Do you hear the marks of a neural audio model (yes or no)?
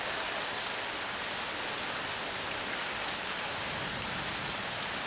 no